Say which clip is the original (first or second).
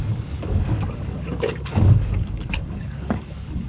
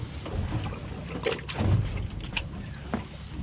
second